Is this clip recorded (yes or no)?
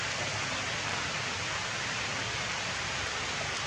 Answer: yes